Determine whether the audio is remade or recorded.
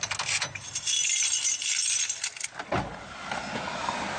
recorded